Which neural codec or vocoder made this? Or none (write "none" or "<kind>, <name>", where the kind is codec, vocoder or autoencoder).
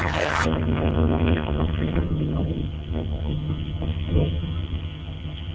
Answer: vocoder, HiFi-GAN